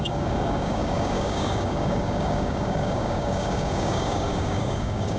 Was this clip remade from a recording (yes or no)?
yes